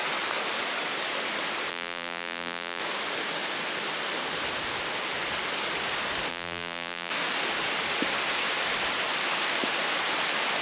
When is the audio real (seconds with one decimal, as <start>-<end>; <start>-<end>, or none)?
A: 0.0-1.7; 2.8-6.3; 7.1-10.6